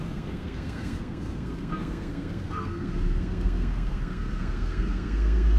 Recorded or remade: remade